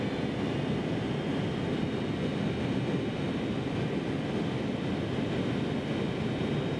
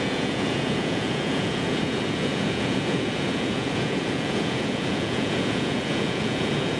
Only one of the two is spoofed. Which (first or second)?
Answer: second